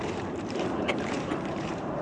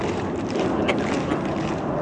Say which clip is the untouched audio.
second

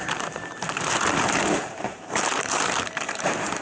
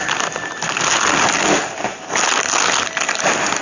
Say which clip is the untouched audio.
second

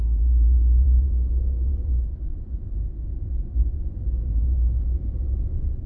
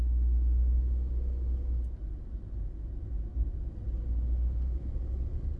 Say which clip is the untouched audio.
second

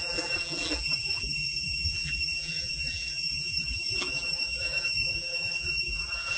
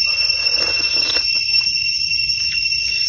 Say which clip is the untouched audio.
second